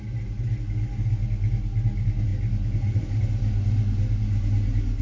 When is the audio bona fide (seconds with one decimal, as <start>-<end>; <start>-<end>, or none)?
0.0-5.0